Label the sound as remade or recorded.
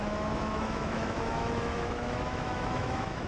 remade